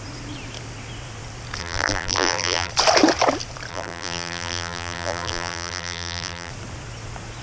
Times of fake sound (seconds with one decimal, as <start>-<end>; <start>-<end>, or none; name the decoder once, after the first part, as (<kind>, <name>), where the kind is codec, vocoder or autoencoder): 1.6-2.7 (vocoder, BigVGAN v2); 3.7-6.5